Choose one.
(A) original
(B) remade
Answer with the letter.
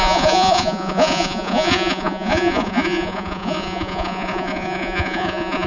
B